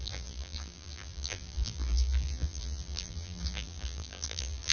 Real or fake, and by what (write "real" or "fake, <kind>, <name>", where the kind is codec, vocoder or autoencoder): fake, vocoder, BigVGAN v2